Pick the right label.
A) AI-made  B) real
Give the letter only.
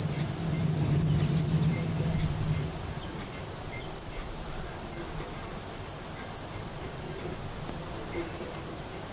B